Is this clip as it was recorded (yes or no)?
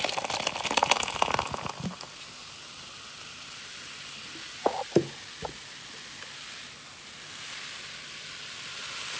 yes